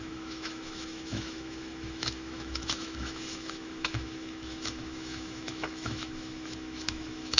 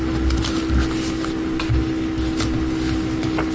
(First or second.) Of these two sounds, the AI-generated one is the first